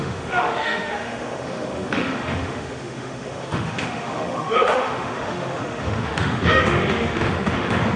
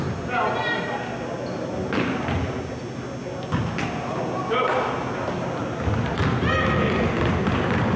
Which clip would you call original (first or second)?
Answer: second